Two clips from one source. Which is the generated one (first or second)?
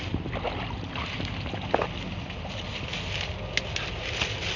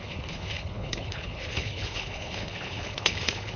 second